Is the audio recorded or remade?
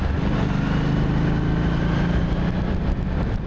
recorded